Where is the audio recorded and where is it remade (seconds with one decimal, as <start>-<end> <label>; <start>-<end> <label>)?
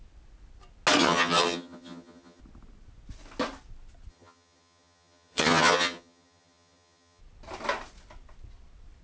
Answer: 0.0-1.0 recorded; 1.0-2.4 remade; 2.4-4.1 recorded; 4.1-7.2 remade; 7.2-9.0 recorded